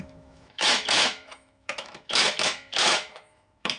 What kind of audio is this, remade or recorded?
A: remade